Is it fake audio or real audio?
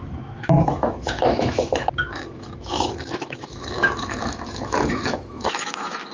fake